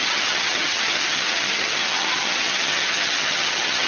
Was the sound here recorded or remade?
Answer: remade